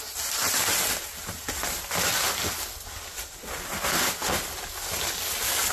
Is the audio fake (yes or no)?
no